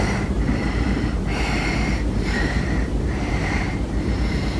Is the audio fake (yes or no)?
yes